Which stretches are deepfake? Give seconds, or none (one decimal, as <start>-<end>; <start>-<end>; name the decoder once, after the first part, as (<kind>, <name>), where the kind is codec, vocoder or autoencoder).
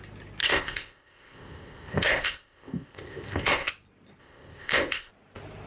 0.4-3.7 (codec, ZipCodec); 4.2-5.1